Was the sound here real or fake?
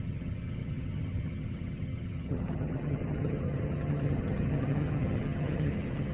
fake